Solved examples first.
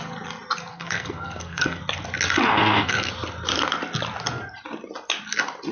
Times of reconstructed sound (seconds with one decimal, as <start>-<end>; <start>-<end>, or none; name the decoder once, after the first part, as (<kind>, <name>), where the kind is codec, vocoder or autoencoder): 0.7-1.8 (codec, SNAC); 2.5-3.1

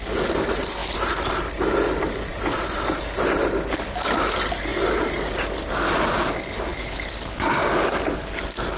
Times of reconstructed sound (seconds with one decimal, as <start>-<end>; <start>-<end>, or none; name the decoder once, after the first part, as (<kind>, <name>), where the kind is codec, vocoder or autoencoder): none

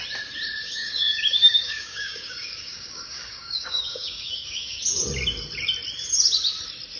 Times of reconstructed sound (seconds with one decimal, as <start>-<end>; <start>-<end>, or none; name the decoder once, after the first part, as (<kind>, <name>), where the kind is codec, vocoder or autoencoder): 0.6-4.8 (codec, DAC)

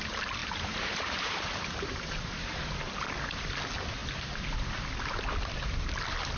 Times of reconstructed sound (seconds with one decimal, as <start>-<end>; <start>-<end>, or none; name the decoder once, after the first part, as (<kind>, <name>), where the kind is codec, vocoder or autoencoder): 0.4-2.7 (vocoder, BigVGAN v2)

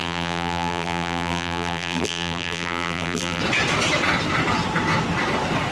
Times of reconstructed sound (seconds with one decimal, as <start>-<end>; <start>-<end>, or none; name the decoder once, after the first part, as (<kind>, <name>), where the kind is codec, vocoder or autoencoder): 0.0-3.4 (vocoder, BigVGAN v2)

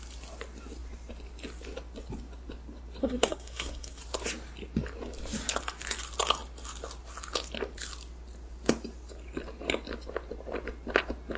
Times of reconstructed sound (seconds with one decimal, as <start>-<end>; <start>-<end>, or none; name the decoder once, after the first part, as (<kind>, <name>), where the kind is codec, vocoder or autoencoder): 3.0-4.0 (codec, SNAC)

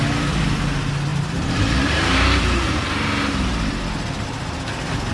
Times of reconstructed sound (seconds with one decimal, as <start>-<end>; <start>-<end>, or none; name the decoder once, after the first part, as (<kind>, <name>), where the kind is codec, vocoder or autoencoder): 1.1-3.2 (vocoder, BigVGAN v2)